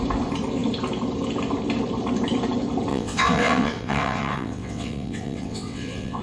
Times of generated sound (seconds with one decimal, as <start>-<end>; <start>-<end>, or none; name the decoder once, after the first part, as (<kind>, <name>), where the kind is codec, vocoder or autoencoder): 2.9-6.2 (vocoder, WaveNeXt)